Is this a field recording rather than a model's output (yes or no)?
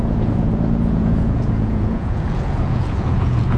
no